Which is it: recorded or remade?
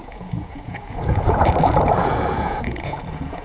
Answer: remade